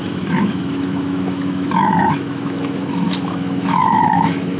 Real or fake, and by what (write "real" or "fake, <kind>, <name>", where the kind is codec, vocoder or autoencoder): fake, autoencoder, DAC-VAE